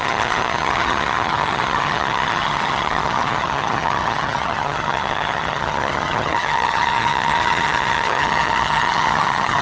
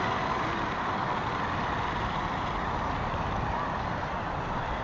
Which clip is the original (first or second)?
second